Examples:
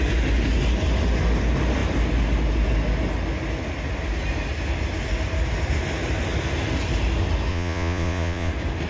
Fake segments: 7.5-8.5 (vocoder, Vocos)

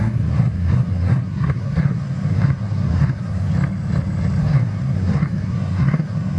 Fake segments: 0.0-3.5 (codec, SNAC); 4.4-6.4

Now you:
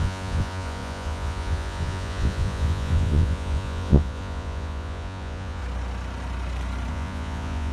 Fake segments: 0.0-5.6 (vocoder, Vocos); 6.9-7.7

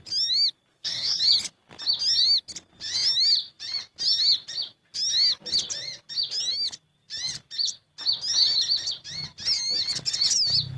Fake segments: 0.7-1.2 (codec, SNAC)

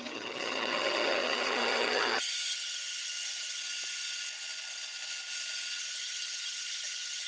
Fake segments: 0.0-3.6 (vocoder, HiFi-GAN); 5.8-7.3

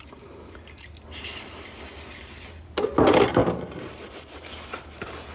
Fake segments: none